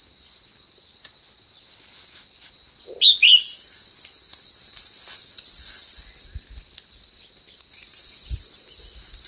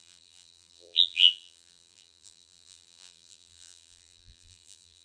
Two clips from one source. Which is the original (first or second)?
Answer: first